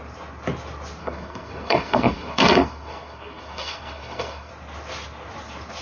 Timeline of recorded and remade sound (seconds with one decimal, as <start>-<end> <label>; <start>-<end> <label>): 0.0-1.0 recorded; 1.0-4.5 remade; 4.5-5.8 recorded